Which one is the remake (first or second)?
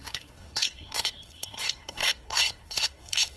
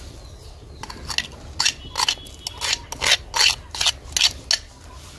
first